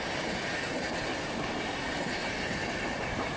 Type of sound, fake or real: real